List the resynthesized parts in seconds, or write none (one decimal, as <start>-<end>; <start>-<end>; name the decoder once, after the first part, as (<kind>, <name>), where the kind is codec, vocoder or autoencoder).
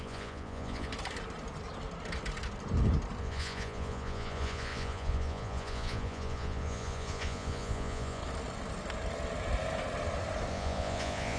0.0-0.9 (vocoder, Vocos); 3.2-8.2; 10.5-11.4